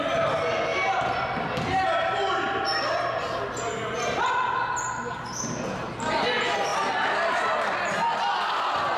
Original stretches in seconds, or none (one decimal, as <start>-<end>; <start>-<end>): 0.0-9.0